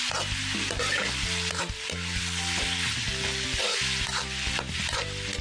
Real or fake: real